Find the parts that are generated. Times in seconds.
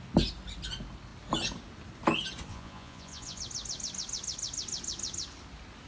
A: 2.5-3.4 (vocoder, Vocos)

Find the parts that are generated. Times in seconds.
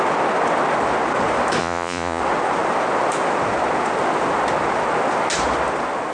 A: 1.6-2.2 (vocoder, Vocos)